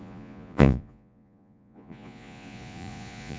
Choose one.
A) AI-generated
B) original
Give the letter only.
A